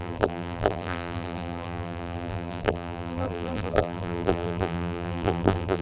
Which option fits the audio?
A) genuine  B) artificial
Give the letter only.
B